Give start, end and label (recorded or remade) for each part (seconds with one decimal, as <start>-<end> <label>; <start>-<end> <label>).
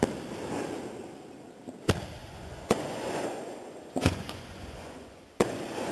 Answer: 0.0-2.2 recorded; 2.2-5.9 remade